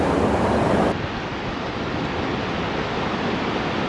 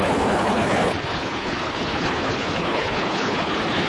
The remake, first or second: second